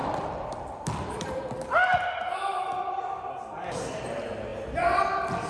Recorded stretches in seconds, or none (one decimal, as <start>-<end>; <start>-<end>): 0.0-5.5